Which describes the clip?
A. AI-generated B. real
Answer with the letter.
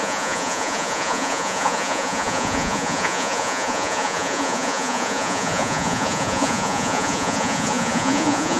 A